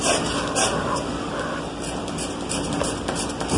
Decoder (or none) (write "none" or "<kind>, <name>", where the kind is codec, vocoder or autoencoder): none